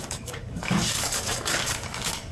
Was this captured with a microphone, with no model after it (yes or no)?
no